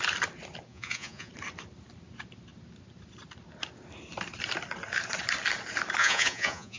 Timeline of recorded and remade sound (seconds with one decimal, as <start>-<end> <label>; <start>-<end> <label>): 0.0-0.7 recorded; 0.7-1.3 remade; 1.3-6.0 recorded; 6.0-6.8 remade